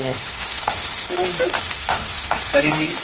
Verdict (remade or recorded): remade